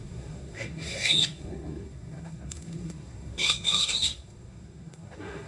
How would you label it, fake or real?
fake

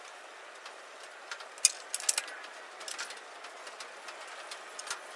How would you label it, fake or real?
real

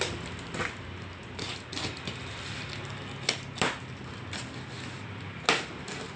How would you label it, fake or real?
real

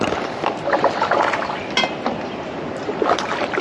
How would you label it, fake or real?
real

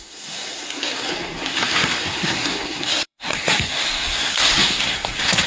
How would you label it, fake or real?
fake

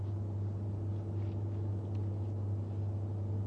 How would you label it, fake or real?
real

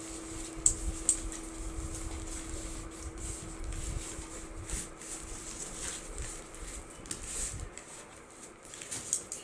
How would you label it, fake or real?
real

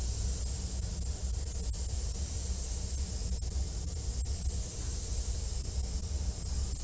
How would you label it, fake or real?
real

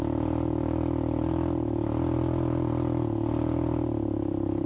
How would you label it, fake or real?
real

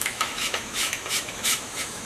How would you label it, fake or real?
fake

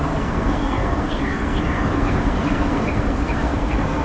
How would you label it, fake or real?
fake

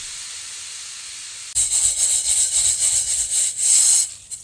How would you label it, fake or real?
real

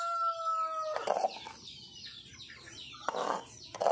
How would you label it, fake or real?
real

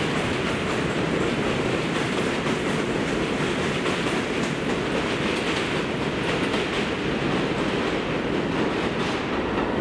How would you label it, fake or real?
real